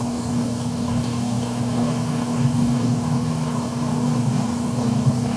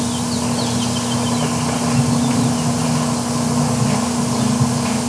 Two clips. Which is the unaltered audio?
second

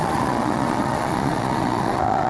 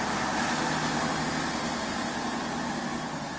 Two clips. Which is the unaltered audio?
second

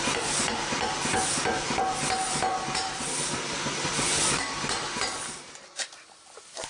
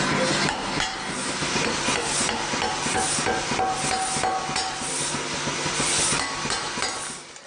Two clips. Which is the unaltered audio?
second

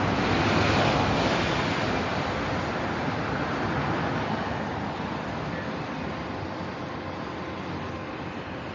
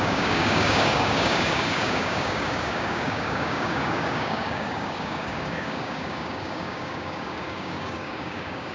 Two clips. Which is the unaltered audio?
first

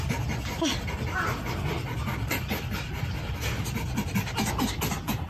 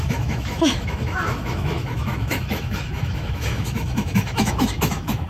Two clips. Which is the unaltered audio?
first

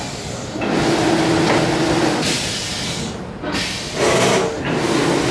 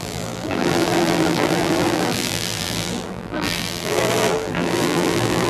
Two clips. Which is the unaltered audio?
first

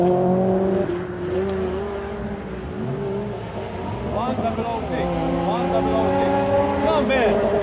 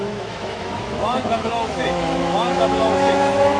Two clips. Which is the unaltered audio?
first